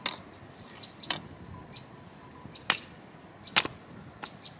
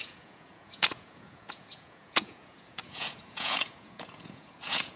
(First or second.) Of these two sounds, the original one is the first